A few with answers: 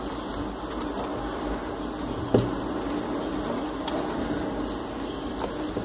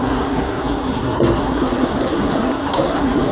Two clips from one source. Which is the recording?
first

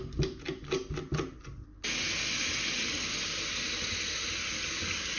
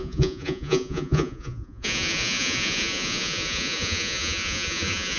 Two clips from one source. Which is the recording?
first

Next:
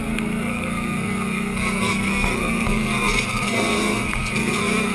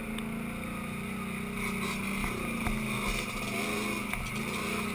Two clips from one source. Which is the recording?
second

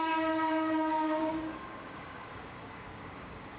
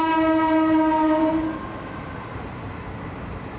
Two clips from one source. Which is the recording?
second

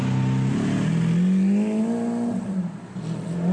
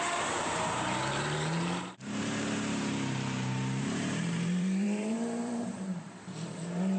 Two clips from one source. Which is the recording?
first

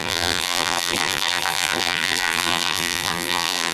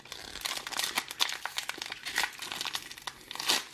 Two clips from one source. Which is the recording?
second